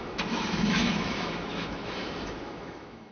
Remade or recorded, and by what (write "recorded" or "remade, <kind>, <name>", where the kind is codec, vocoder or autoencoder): remade, autoencoder, DAC-VAE